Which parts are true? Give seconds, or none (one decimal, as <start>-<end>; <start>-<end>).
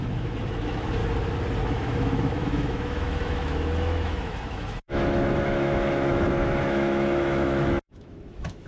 1.0-1.6